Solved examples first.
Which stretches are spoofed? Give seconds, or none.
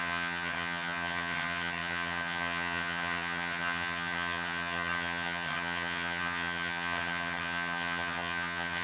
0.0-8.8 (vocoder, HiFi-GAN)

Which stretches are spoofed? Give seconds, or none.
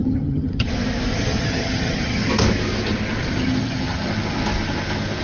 0.0-0.7 (vocoder, HiFi-GAN); 1.1-2.3; 3.2-4.1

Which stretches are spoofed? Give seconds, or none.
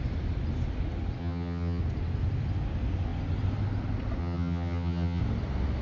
1.2-1.8 (vocoder, HiFi-GAN); 4.2-5.2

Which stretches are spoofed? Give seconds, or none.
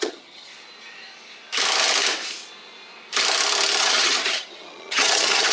0.0-0.5 (vocoder, HiFi-GAN); 3.8-5.5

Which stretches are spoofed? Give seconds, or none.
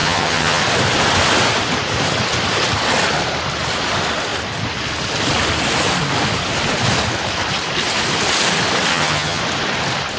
0.0-0.6 (vocoder, HiFi-GAN); 8.9-9.4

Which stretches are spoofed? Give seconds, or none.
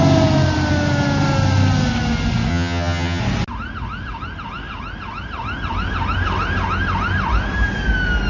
2.5-3.2 (vocoder, HiFi-GAN)